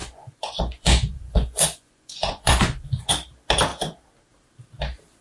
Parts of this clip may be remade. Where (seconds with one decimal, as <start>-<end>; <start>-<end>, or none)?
0.0-3.1